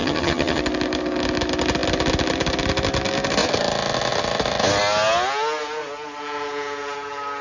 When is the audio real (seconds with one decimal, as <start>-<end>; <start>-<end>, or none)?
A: 0.6-7.4